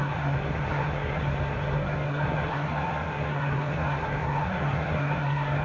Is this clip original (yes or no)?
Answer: no